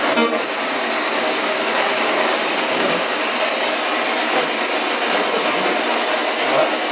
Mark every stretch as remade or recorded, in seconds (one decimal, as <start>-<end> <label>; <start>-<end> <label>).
0.0-0.6 recorded; 0.6-3.3 remade; 3.3-6.9 recorded